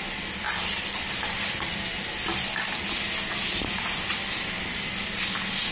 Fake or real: real